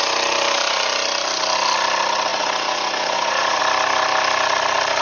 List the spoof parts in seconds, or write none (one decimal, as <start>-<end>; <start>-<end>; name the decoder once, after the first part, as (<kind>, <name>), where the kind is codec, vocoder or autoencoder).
2.3-3.6 (vocoder, Vocos)